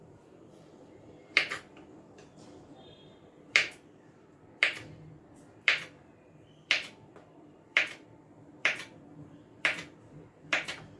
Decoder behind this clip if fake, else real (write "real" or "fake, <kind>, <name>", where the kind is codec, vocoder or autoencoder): fake, vocoder, BigVGAN v2